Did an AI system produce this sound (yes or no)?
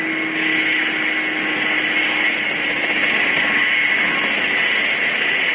no